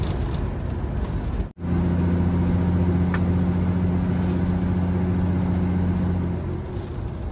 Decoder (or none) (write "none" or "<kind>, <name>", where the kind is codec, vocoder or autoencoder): none